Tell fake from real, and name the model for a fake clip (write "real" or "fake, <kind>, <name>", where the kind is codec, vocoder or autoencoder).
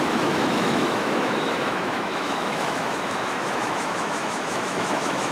fake, autoencoder, DAC-VAE